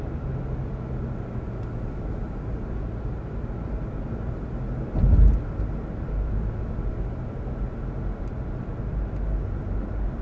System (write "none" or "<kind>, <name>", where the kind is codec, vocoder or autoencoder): none